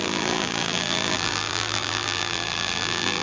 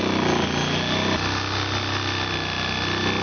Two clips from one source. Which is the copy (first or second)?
first